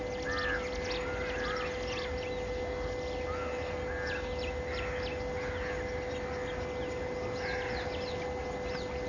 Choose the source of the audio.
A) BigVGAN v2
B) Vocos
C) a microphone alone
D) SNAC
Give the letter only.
C